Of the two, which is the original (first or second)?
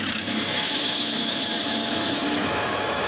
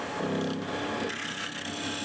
second